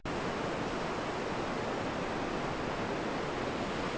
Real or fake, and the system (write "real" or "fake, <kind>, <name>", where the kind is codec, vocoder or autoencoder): real